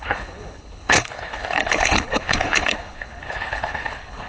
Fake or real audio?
fake